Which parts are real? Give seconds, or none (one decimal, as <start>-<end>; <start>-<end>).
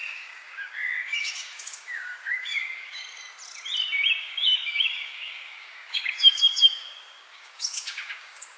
3.0-4.2